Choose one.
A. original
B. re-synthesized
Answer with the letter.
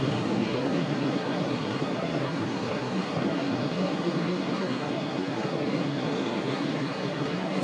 B